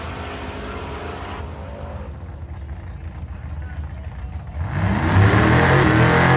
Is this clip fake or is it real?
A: real